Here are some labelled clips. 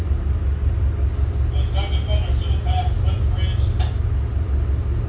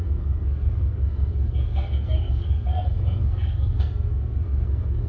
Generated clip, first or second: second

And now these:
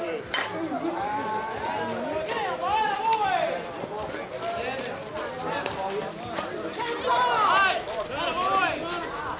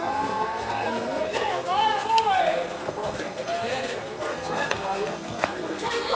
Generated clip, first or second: second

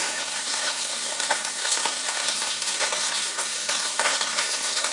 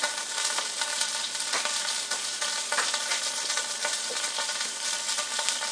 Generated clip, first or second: first